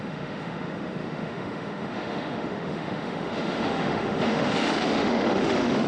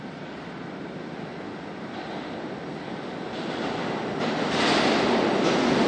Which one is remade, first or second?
first